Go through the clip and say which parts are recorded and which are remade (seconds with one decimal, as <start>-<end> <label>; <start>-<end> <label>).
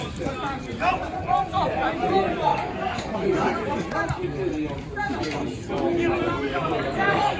0.0-2.5 recorded; 2.5-3.1 remade; 3.1-6.5 recorded; 6.5-7.4 remade